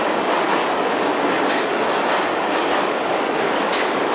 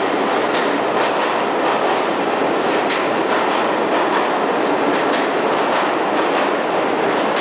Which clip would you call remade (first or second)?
first